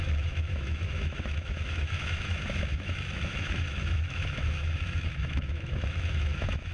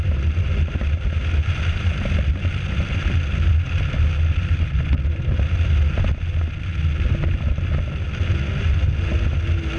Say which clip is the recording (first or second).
second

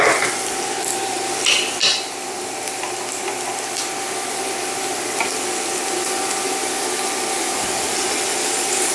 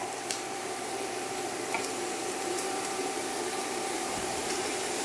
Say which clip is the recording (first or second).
first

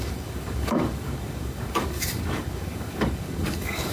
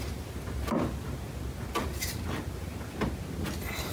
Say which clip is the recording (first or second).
second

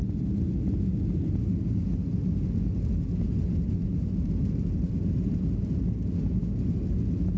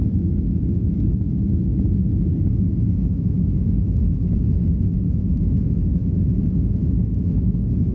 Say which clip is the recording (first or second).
first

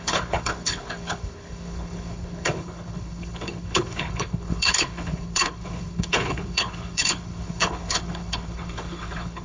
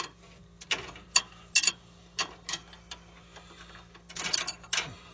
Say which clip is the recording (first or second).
second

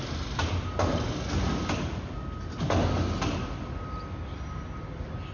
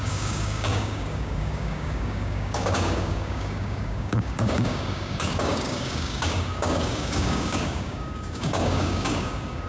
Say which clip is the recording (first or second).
first